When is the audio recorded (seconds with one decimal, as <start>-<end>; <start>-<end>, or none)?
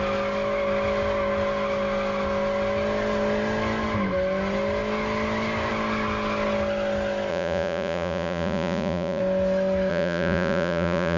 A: 0.0-7.3; 9.2-9.9